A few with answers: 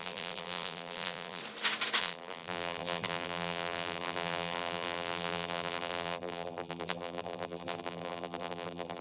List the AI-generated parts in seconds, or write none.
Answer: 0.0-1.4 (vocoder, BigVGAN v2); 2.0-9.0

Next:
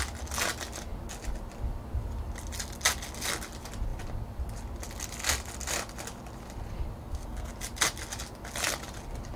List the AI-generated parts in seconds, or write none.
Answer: 7.0-7.5 (codec, SNAC)

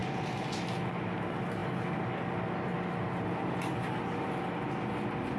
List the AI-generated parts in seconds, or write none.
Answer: none